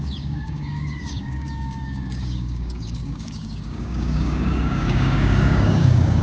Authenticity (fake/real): fake